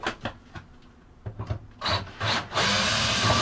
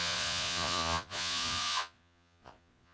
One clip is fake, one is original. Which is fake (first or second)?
second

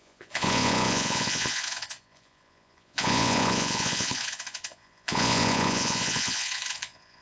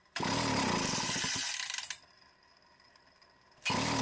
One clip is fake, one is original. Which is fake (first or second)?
first